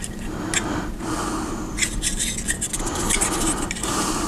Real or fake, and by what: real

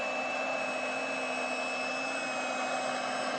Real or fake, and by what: real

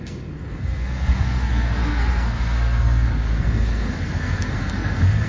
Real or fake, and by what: fake, codec, SNAC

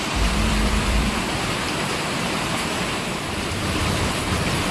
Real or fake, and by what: fake, vocoder, BigVGAN v2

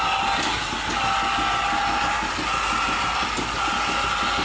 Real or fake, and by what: real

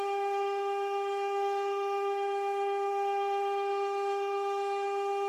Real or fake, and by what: fake, codec, DAC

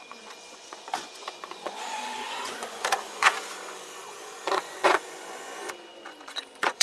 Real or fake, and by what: fake, vocoder, Vocos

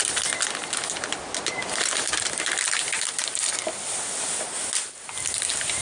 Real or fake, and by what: real